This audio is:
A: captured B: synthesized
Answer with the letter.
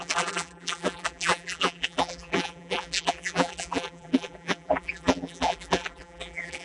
B